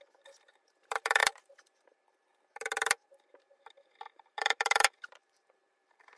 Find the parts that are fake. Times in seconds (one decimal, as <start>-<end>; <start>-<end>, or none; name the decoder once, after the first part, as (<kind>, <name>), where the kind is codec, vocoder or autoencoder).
0.0-6.2 (vocoder, BigVGAN v2)